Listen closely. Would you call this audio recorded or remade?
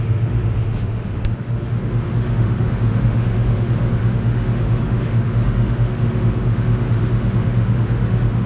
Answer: remade